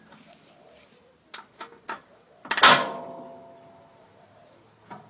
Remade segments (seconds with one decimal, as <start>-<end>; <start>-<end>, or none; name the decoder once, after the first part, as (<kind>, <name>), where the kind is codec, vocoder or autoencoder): none